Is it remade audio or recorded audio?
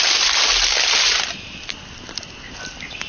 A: recorded